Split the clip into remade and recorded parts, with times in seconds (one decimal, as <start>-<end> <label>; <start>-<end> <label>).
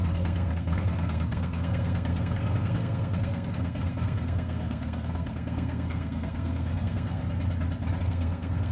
0.0-7.2 remade; 7.2-8.0 recorded; 8.0-8.7 remade